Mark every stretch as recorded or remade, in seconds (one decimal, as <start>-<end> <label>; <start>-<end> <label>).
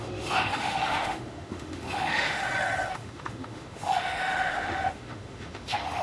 0.0-2.4 remade; 2.4-2.9 recorded; 2.9-6.0 remade